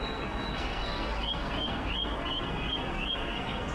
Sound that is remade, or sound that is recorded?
remade